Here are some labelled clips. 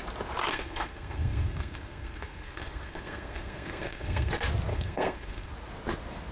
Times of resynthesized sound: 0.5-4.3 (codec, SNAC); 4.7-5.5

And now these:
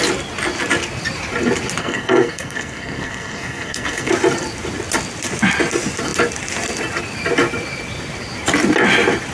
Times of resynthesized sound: 1.8-4.1 (codec, SNAC)